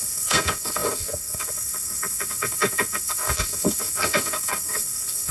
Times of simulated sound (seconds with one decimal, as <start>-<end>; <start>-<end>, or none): 0.0-5.3